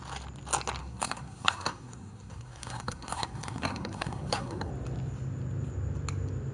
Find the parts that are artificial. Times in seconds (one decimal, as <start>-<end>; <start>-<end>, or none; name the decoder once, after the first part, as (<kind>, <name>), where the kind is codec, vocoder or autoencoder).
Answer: 0.8-4.7 (codec, SNAC)

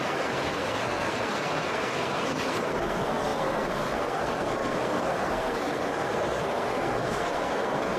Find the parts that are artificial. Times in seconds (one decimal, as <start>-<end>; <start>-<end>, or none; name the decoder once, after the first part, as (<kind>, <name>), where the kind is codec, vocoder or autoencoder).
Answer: 0.0-8.0 (codec, SNAC)

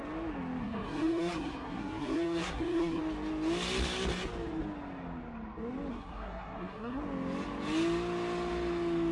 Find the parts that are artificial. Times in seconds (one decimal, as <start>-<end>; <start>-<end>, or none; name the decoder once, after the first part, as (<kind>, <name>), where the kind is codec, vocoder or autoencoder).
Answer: 0.6-3.0 (codec, SNAC); 5.9-7.0

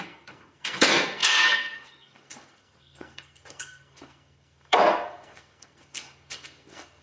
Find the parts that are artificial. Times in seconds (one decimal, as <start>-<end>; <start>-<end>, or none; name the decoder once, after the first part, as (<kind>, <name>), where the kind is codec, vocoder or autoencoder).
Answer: 0.0-7.0 (codec, SNAC)